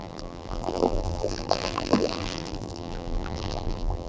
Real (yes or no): no